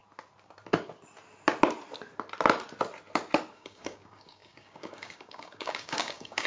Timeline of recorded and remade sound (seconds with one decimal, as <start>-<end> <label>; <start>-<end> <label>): 0.0-3.5 recorded; 3.5-6.5 remade